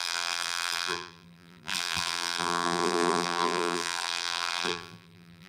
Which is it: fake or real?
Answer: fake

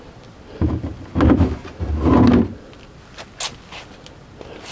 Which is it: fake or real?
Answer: real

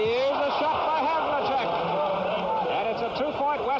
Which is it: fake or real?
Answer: real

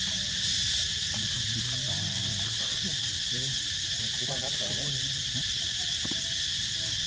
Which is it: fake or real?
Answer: fake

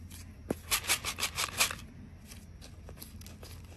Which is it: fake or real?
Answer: real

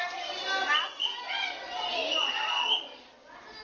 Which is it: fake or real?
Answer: real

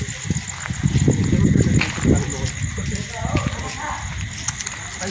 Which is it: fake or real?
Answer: real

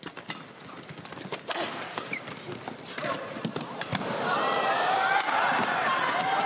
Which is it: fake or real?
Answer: fake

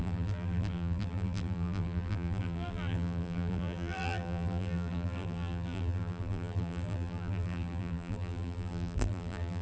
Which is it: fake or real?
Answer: fake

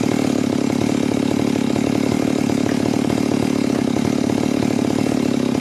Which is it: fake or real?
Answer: real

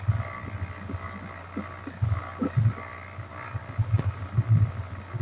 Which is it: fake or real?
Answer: real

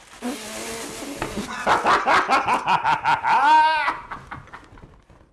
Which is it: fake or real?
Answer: real